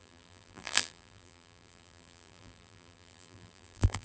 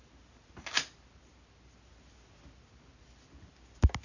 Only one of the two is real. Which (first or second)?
second